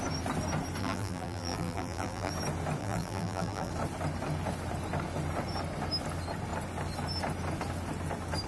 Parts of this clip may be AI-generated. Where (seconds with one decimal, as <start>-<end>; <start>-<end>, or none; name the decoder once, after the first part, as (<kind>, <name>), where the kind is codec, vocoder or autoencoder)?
0.8-2.3 (vocoder, BigVGAN v2); 2.8-3.7

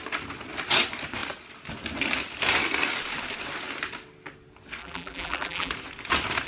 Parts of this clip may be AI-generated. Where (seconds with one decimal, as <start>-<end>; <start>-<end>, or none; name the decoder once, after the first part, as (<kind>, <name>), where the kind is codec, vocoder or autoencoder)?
4.8-5.7 (vocoder, BigVGAN v2)

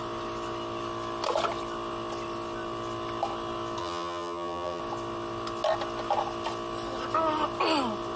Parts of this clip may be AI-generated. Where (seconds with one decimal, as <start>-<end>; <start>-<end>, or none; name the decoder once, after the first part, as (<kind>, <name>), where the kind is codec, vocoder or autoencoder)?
3.8-4.8 (vocoder, BigVGAN v2)

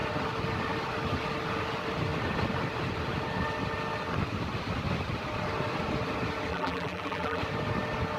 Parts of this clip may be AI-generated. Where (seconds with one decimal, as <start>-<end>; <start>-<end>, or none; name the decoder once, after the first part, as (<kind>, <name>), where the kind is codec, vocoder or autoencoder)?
6.5-7.4 (vocoder, BigVGAN v2)

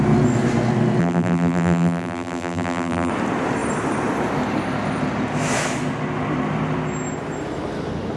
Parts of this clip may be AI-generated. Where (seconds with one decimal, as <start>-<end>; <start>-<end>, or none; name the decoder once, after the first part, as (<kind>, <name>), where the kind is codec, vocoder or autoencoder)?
1.0-3.1 (vocoder, BigVGAN v2)